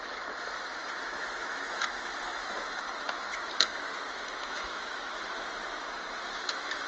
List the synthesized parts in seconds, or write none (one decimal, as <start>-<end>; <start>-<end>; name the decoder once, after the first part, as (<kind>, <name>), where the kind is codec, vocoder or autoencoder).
0.0-6.9 (autoencoder, DAC-VAE)

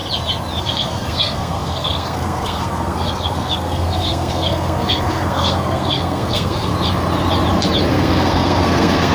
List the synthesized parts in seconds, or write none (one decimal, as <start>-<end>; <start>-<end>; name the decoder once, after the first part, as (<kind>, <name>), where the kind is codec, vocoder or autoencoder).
0.6-6.7 (codec, SNAC); 7.9-9.1

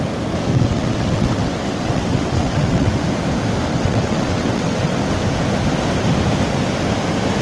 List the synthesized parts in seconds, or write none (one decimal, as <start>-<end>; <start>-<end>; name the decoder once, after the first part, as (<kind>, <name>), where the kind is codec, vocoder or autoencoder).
0.5-2.9 (vocoder, WaveNeXt); 3.7-5.0